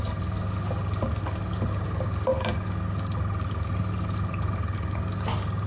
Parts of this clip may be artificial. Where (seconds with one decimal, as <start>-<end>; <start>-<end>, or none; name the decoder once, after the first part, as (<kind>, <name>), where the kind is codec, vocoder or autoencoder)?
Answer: none